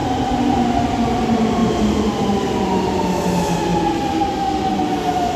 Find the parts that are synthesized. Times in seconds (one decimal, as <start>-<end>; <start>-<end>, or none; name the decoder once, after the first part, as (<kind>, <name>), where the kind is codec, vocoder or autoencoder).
none